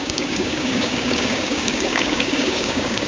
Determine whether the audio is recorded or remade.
remade